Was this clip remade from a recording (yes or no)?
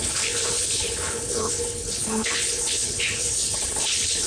yes